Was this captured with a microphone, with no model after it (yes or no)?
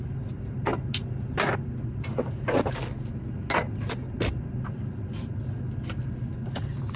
yes